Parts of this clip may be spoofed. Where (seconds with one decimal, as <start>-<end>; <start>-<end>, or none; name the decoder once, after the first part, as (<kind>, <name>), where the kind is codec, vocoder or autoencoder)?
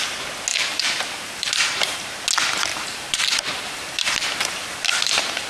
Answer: 0.5-2.2 (vocoder, BigVGAN v2); 2.7-5.5